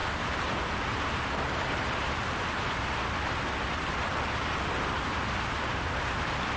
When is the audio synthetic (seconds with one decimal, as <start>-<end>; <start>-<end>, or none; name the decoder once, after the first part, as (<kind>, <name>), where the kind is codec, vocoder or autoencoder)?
0.0-3.4 (vocoder, BigVGAN v2)